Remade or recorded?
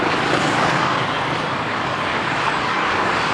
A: remade